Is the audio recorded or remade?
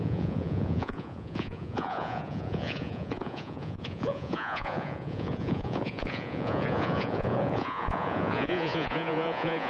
remade